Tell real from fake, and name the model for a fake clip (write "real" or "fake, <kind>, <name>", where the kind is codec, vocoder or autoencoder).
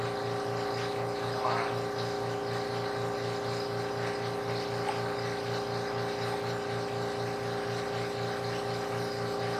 real